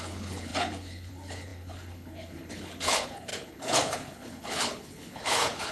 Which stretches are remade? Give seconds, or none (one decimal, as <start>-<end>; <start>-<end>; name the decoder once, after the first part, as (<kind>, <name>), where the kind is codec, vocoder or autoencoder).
0.0-5.7 (codec, HILCodec)